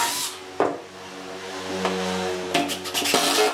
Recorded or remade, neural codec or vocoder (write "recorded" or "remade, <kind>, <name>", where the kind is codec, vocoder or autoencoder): recorded